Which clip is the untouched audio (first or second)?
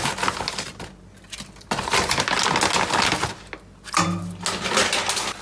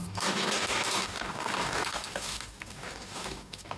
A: first